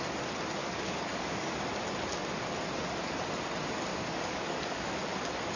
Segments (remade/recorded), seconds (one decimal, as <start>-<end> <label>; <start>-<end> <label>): 0.0-0.6 recorded; 0.6-1.6 remade; 1.6-3.9 recorded; 3.9-4.9 remade; 4.9-5.6 recorded

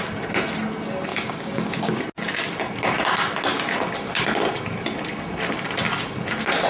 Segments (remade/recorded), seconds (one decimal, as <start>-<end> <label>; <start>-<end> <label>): 0.0-1.1 recorded; 1.1-1.9 remade; 1.9-6.7 recorded

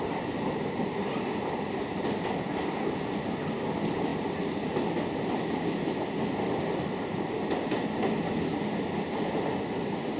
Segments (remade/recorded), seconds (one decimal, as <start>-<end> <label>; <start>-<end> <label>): 0.0-10.2 recorded

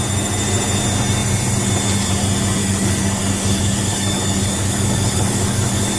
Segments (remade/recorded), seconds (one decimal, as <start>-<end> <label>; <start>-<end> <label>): 0.0-2.6 recorded; 2.6-6.0 remade

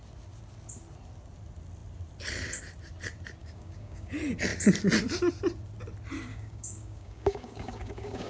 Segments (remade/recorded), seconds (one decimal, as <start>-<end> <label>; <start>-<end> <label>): 0.0-3.4 recorded; 3.4-4.1 remade; 4.1-6.3 recorded; 6.3-8.3 remade

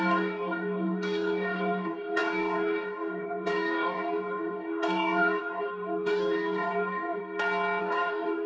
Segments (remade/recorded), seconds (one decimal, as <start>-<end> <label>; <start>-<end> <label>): 0.0-7.2 remade; 7.2-7.8 recorded; 7.8-8.5 remade

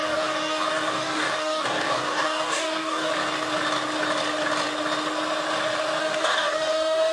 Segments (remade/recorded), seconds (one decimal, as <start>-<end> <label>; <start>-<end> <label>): 0.0-3.1 remade; 3.1-6.0 recorded; 6.0-7.1 remade

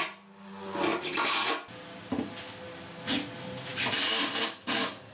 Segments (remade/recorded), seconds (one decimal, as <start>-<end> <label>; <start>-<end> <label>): 0.0-5.1 recorded